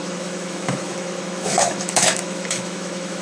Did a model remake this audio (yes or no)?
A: yes